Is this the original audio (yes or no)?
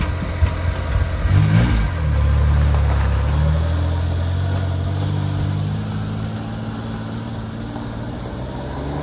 yes